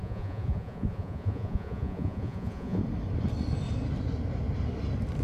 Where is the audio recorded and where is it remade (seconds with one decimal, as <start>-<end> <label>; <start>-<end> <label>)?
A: 0.0-2.8 remade; 2.8-5.2 recorded